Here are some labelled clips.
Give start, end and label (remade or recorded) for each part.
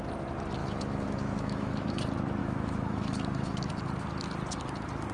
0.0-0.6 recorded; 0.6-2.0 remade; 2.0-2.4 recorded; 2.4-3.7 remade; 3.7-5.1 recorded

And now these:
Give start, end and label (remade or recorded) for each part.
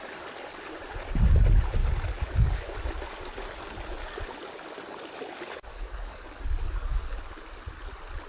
0.0-1.8 recorded; 1.8-2.7 remade; 2.7-5.7 recorded; 5.7-7.2 remade; 7.2-8.3 recorded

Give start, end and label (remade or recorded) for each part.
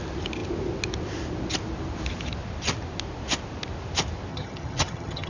0.0-4.3 recorded; 4.3-5.3 remade